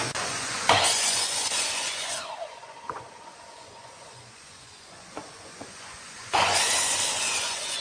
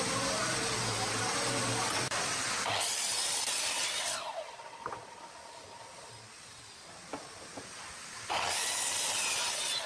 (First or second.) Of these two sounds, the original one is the second